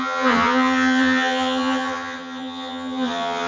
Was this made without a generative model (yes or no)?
no